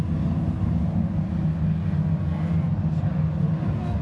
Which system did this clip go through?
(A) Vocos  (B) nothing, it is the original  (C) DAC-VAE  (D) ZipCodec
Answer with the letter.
B